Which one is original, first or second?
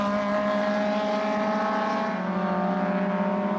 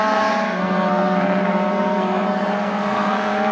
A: first